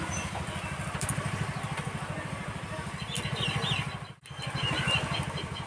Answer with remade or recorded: recorded